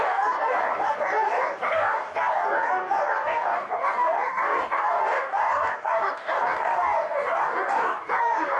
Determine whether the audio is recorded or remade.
remade